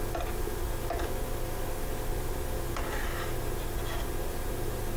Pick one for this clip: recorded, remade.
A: recorded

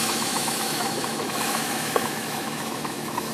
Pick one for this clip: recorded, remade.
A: remade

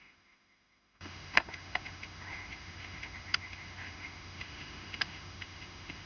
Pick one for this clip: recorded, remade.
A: remade